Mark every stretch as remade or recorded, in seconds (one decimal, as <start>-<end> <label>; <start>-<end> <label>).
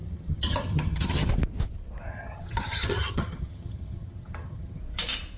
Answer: 0.0-1.3 remade; 1.3-2.1 recorded; 2.1-4.8 remade; 4.8-5.4 recorded